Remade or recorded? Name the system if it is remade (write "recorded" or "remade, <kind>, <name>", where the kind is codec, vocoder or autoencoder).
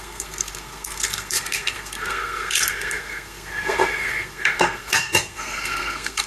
remade, codec, SNAC